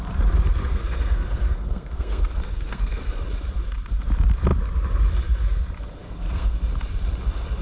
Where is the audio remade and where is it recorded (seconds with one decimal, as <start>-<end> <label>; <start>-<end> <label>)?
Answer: 0.0-0.6 recorded; 0.6-3.2 remade; 3.2-6.0 recorded; 6.0-6.6 remade; 6.6-7.6 recorded